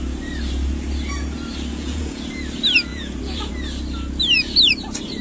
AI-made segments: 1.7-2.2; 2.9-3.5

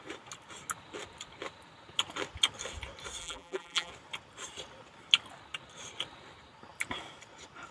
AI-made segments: 3.2-3.9

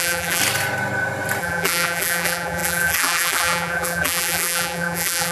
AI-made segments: 0.0-0.4; 1.4-5.3

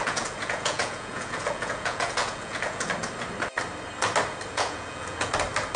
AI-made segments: 0.0-2.8; 4.5-5.3

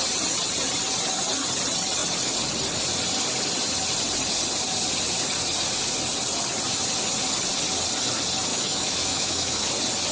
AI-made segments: 8.5-9.7

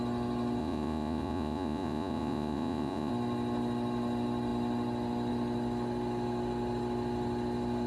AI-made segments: 0.6-3.1

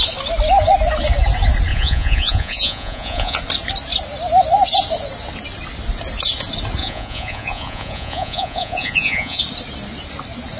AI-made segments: 1.7-3.4; 6.8-9.4